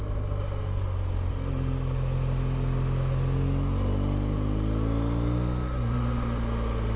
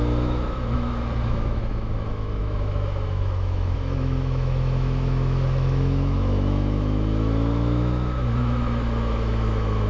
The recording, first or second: first